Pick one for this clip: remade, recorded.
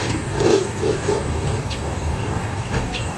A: remade